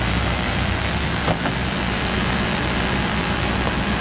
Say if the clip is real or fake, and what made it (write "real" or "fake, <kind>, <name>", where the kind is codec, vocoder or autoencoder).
fake, vocoder, BigVGAN v2